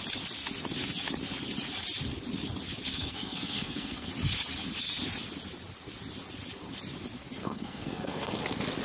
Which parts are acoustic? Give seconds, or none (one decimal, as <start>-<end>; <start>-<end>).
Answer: 0.0-2.9; 4.1-7.4; 8.4-8.8